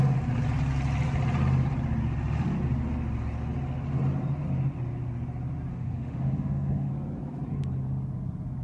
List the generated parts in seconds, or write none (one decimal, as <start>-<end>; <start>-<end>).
5.7-6.9